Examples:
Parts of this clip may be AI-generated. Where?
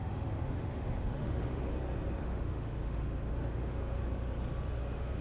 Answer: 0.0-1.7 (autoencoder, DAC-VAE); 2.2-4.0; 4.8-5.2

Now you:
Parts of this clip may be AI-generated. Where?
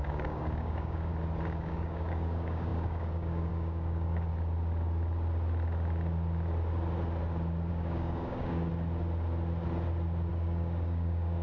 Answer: 0.0-1.1 (codec, DAC); 1.6-4.3; 7.7-8.7; 10.3-11.4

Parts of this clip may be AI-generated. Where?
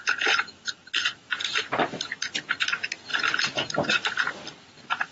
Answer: 1.4-2.1 (vocoder, BigVGAN v2); 3.1-4.2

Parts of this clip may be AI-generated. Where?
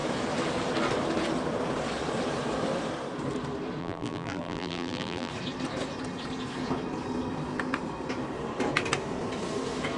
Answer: 3.8-5.3 (vocoder, BigVGAN v2)